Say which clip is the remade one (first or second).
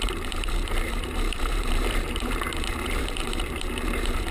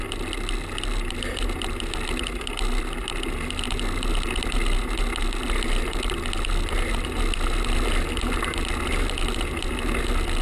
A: first